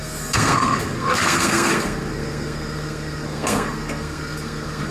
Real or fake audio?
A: fake